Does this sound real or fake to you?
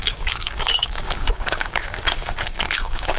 fake